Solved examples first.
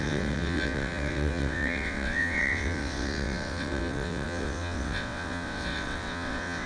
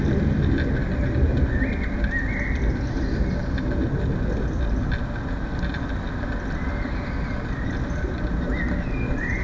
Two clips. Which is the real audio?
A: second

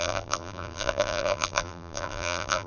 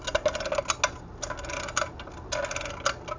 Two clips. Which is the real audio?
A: second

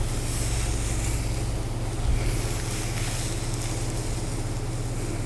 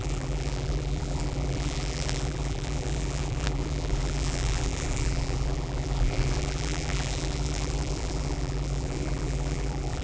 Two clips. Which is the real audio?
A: first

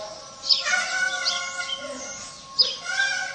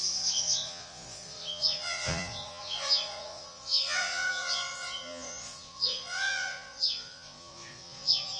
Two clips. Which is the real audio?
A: first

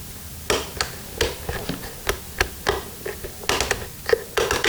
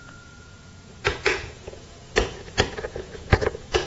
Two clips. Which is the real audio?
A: first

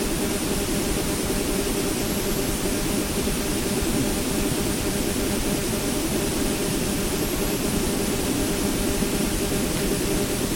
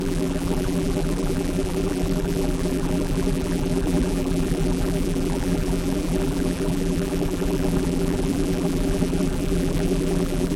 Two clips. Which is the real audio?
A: first